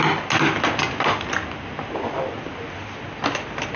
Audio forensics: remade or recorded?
recorded